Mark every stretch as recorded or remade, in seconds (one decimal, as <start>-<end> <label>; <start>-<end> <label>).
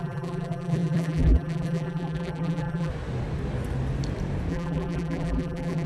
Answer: 0.0-2.9 remade; 2.9-4.5 recorded; 4.5-5.9 remade